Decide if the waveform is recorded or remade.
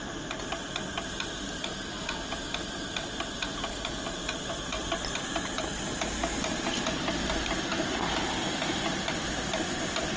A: recorded